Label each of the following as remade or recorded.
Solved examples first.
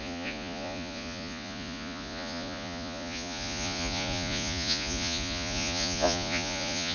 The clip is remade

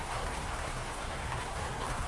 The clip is remade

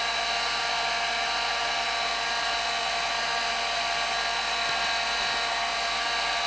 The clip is recorded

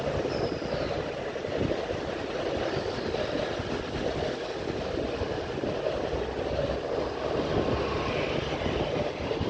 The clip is recorded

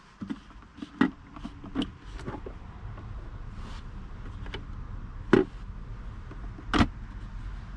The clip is recorded